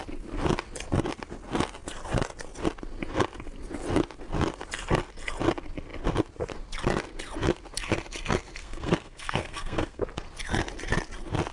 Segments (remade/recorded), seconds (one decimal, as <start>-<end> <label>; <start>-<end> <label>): 0.0-8.6 recorded; 8.6-10.0 remade; 10.0-11.5 recorded